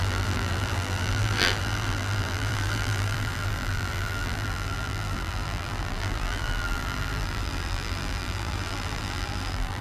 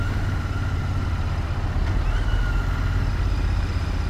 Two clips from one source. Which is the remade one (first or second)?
first